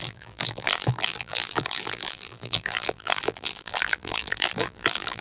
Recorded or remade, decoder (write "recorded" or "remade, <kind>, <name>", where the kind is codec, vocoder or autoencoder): remade, vocoder, BigVGAN v2